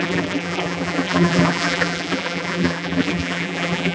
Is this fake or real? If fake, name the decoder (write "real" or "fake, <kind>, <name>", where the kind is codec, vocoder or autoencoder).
fake, vocoder, BigVGAN v2